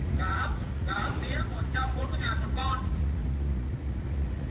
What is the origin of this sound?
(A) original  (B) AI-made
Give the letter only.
B